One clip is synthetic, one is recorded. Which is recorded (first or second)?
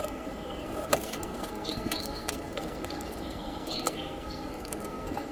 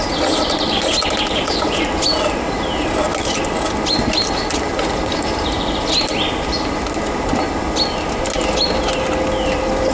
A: second